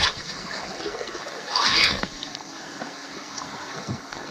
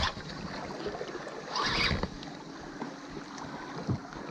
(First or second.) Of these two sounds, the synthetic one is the first